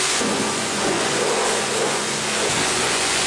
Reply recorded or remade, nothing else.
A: remade